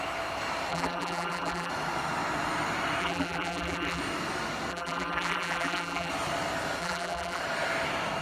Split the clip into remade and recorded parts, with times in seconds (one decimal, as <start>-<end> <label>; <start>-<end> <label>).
0.0-0.7 recorded; 0.7-1.7 remade; 1.7-3.0 recorded; 3.0-4.0 remade; 4.0-4.7 recorded; 4.7-6.1 remade; 6.1-6.8 recorded; 6.8-7.4 remade; 7.4-8.2 recorded